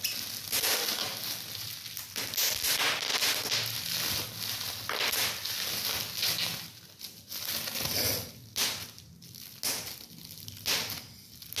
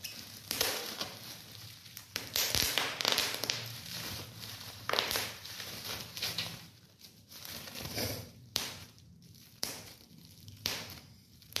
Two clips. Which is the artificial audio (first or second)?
second